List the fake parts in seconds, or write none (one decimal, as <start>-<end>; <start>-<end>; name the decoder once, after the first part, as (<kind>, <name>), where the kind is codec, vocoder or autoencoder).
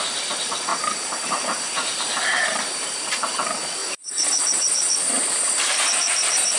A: 0.7-3.1 (vocoder, BigVGAN v2); 3.8-6.6